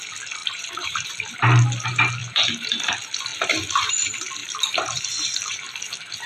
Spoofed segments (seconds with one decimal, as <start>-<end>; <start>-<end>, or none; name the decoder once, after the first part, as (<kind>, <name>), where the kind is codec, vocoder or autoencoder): 0.4-1.1 (vocoder, BigVGAN v2); 2.2-2.9; 4.4-5.7